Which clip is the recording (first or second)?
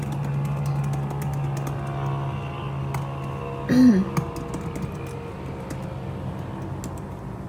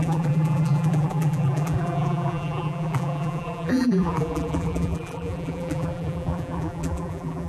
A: first